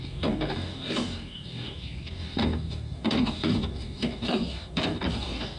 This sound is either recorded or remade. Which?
remade